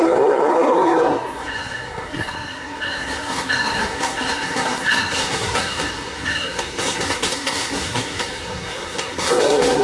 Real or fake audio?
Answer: fake